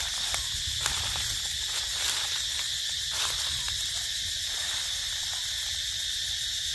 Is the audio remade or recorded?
recorded